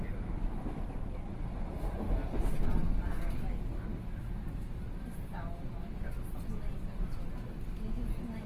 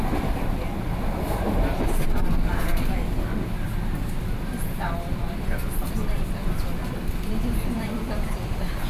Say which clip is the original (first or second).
first